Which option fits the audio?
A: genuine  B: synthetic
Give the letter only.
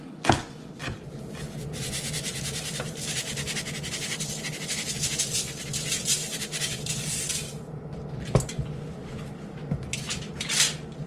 A